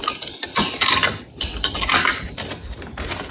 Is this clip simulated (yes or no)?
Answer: yes